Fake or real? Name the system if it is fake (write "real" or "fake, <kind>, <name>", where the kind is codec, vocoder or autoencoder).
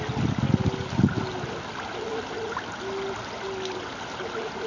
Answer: real